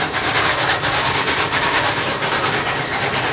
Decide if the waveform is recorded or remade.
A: recorded